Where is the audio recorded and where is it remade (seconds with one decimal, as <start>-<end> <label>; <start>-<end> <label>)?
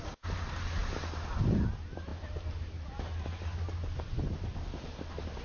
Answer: 0.0-5.4 recorded